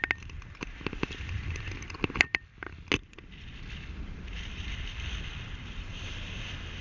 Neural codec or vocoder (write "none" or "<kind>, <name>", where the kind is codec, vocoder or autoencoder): none